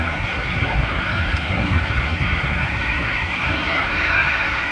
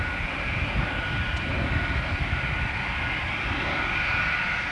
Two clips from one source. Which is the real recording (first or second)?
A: second